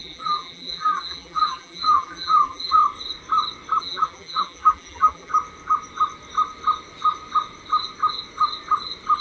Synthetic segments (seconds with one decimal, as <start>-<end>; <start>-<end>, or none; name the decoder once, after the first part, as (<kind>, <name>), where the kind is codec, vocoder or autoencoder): 0.0-2.8 (vocoder, BigVGAN v2); 3.8-5.3

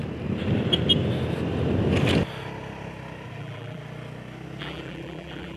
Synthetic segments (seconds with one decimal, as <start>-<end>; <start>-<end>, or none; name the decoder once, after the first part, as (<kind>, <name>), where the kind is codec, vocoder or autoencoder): 3.4-3.8 (vocoder, BigVGAN v2); 4.6-5.6

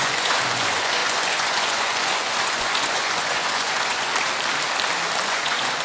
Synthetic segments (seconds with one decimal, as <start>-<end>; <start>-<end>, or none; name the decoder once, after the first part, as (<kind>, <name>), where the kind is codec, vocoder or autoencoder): 0.0-4.1 (vocoder, Vocos); 5.2-5.8

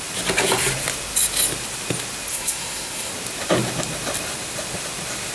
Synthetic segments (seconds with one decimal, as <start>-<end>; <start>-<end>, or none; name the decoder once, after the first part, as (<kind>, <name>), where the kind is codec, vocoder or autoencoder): 2.3-3.1 (codec, SNAC)

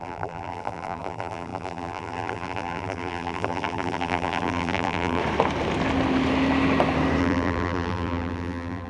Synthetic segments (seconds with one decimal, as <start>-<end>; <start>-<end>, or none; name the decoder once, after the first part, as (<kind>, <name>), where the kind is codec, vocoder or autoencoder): 0.0-5.2 (vocoder, BigVGAN v2); 7.2-8.9